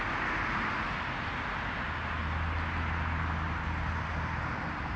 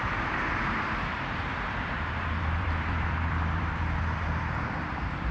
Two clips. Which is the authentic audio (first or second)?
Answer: first